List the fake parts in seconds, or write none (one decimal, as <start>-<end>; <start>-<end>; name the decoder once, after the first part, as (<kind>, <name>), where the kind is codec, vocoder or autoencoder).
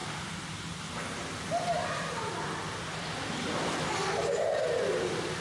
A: none